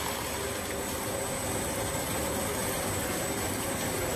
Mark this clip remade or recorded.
recorded